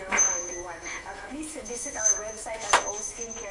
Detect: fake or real fake